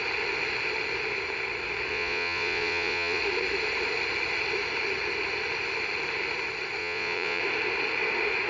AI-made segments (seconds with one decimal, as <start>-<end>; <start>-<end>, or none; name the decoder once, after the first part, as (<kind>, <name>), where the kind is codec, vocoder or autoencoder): 1.9-3.2 (vocoder, Vocos); 6.8-7.4